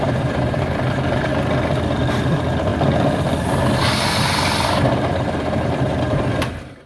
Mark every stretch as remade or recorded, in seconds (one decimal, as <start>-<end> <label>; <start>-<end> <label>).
0.0-1.3 remade; 1.3-2.0 recorded; 2.0-2.7 remade; 2.7-5.1 recorded; 5.1-6.9 remade